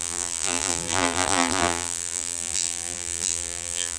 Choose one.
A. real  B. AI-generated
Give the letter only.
B